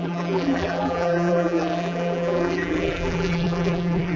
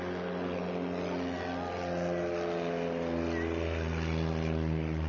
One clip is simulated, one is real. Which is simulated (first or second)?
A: first